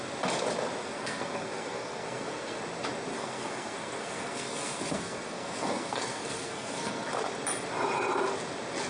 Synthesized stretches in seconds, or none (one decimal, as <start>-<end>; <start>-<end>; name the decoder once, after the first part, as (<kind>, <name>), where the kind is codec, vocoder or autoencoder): 0.8-2.6 (codec, SNAC); 3.1-7.1